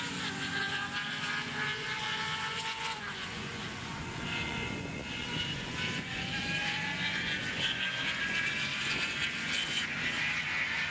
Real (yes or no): no